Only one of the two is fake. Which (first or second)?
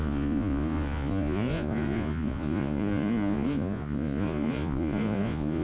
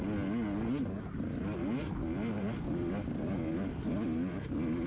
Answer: first